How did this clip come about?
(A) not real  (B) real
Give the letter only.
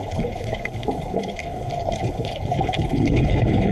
A